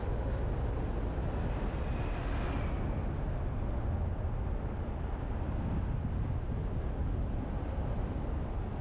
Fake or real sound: real